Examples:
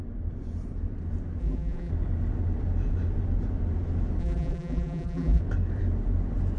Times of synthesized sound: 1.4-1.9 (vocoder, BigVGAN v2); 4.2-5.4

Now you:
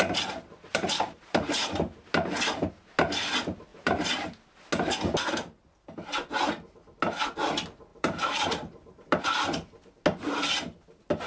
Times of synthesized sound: 0.7-2.0 (vocoder, BigVGAN v2); 3.7-4.4; 7.9-9.2

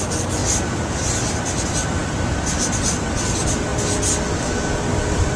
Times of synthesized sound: none

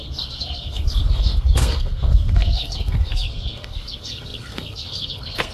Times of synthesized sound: 0.0-5.5 (codec, SNAC)

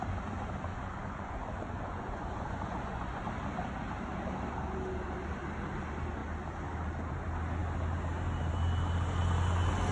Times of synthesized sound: 0.7-3.2 (vocoder, Vocos)

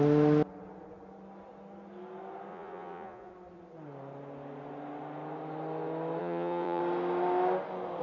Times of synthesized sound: 2.5-3.3 (vocoder, Vocos); 6.2-6.8

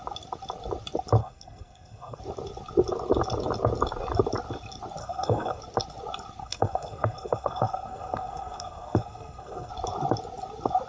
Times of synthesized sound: 1.2-2.2 (codec, SNAC); 5.0-5.6; 6.4-9.7

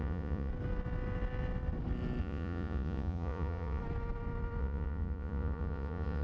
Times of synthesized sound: 0.0-0.5 (vocoder, Vocos); 2.2-3.8; 4.6-6.2